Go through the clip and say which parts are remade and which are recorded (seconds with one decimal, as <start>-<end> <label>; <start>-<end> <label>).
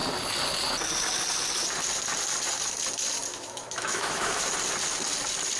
0.0-3.3 recorded; 3.3-4.5 remade; 4.5-5.6 recorded